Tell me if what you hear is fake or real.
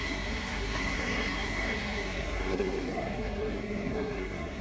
fake